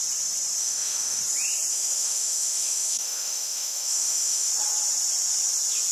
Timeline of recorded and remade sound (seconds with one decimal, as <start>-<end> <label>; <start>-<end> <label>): 0.0-0.6 recorded; 0.6-1.2 remade; 1.2-1.7 recorded; 1.7-4.5 remade; 4.5-5.9 recorded